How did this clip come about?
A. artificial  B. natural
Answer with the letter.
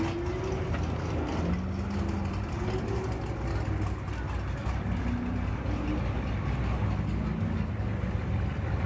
B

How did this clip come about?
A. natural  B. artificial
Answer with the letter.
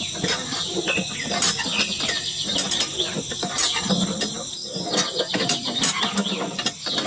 A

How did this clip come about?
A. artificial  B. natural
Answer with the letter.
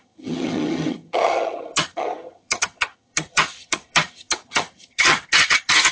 A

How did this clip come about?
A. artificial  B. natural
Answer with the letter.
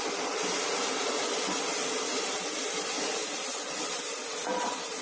B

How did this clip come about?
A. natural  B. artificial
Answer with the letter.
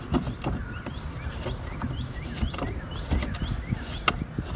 A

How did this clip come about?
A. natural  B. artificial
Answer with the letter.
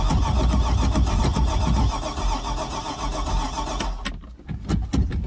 A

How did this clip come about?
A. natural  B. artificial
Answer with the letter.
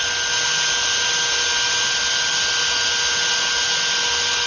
A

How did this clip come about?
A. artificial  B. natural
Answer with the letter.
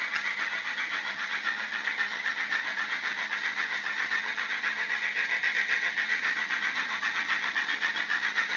A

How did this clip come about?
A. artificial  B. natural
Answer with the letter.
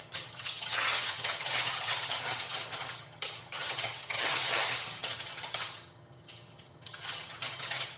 A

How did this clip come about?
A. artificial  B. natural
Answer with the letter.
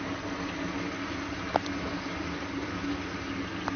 B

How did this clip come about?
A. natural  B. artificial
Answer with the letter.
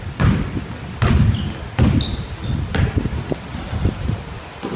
A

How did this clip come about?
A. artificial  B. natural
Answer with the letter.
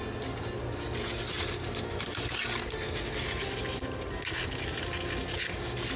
B